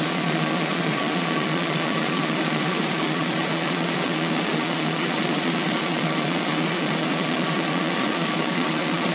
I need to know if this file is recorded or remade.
remade